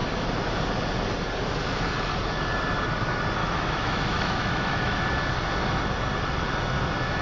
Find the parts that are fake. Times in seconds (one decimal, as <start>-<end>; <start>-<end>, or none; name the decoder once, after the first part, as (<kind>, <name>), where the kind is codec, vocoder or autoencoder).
3.4-5.0 (autoencoder, DAC-VAE)